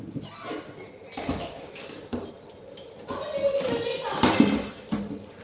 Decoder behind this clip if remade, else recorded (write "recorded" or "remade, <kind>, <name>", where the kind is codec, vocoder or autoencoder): recorded